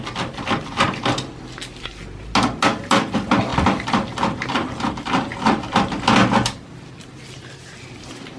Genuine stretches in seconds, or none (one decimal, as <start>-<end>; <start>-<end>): 0.0-8.4